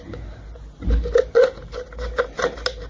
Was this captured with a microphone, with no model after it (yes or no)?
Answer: yes